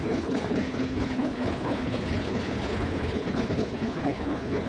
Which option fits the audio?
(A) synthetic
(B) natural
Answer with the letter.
A